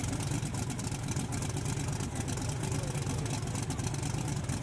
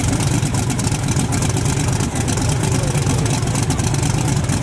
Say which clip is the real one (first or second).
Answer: first